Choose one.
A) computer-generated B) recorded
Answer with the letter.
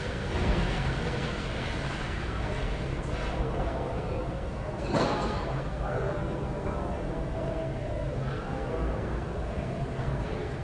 A